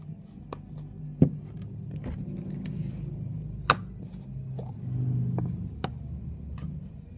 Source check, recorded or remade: recorded